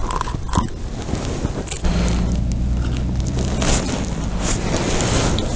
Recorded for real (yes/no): yes